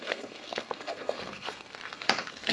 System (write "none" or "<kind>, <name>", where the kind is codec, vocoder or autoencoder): codec, SNAC